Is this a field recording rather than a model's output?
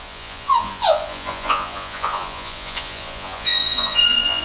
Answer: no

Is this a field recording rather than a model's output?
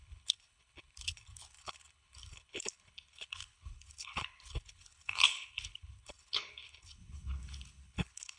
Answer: no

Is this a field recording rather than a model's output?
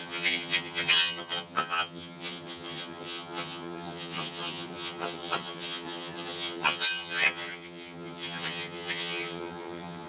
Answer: no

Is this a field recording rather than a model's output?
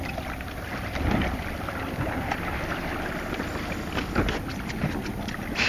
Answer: yes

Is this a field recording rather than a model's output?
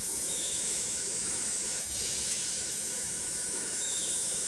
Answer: no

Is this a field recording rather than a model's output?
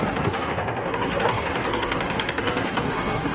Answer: no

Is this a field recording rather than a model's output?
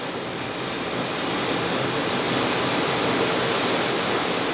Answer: yes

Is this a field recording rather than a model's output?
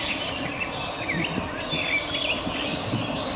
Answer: no